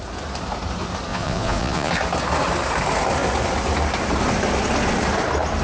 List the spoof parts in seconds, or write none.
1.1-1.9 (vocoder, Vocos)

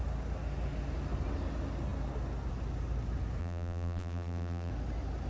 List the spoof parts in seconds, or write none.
3.4-4.7 (vocoder, BigVGAN v2)

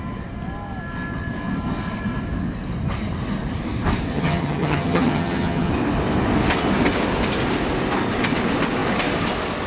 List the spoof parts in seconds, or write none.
4.1-5.7 (vocoder, HiFi-GAN)

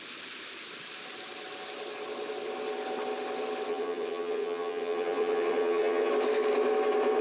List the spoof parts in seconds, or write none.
3.7-6.1 (vocoder, HiFi-GAN)

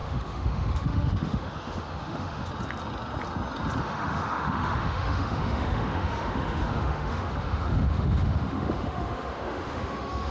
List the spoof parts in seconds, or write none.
0.0-2.5 (autoencoder, DAC-VAE); 3.8-10.3